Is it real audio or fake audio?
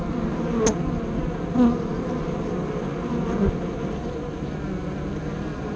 real